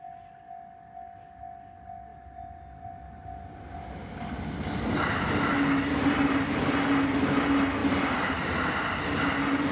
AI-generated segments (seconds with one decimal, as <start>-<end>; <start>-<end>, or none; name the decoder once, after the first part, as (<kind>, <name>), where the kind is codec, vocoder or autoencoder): 2.1-2.9 (vocoder, BigVGAN v2); 7.8-8.7